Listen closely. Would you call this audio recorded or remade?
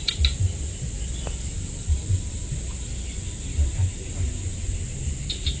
recorded